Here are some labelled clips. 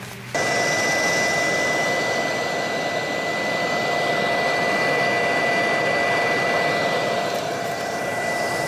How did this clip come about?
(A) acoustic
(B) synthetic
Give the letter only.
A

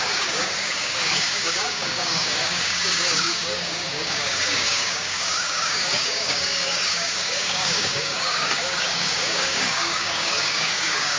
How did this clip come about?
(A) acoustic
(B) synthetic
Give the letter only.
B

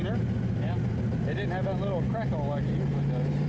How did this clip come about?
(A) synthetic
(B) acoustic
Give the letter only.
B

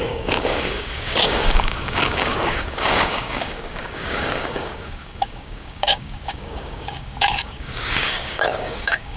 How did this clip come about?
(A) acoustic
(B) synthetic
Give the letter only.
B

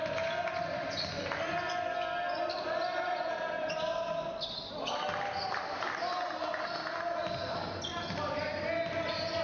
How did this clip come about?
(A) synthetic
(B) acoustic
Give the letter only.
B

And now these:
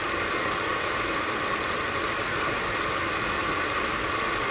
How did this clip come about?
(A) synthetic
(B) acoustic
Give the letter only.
B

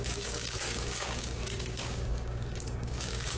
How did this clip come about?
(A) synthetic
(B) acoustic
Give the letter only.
A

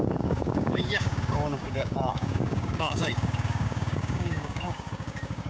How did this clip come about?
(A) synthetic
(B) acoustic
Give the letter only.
A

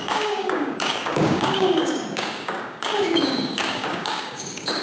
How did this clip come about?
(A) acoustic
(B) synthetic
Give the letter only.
B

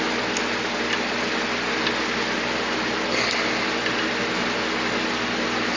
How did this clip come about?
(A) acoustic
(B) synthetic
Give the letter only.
A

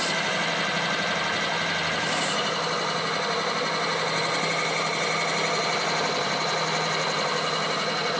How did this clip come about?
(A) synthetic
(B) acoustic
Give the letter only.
B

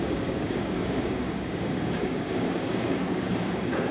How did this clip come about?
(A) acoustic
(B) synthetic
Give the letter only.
B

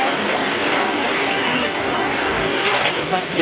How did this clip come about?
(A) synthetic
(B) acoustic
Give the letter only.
A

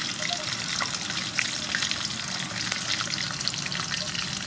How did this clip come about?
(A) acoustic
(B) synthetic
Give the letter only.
A